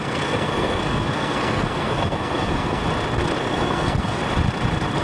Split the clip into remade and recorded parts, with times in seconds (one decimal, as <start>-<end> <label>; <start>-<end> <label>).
0.0-2.8 remade; 2.8-3.4 recorded; 3.4-4.2 remade; 4.2-5.0 recorded